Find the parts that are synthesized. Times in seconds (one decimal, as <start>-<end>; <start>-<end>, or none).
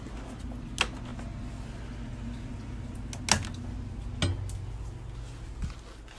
none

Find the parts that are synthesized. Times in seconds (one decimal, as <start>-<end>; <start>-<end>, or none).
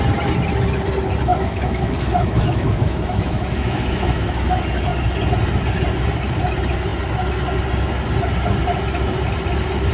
1.3-4.5